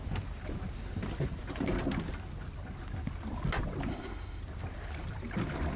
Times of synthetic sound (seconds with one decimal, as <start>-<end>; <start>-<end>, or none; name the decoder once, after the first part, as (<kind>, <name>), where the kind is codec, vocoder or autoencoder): 3.9-4.4 (autoencoder, DAC-VAE)